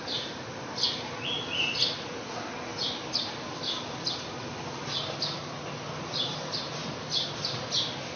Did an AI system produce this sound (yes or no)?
no